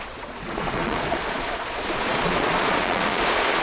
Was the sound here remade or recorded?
remade